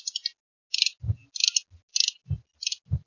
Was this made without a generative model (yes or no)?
yes